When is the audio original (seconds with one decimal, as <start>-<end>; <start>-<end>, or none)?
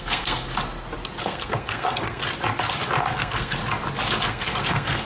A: 0.5-1.2; 2.2-3.0; 3.6-4.3